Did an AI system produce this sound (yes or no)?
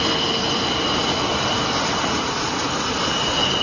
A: no